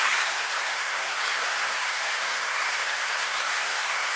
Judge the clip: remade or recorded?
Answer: remade